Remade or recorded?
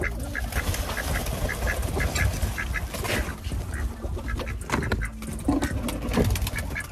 recorded